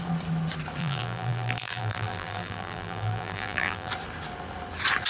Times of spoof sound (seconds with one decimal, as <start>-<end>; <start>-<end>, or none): 0.8-3.9